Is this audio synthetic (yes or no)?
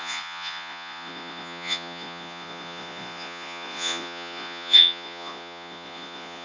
yes